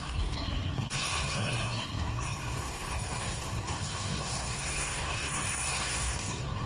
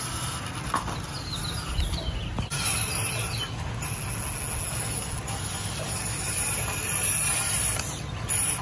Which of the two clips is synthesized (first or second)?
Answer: first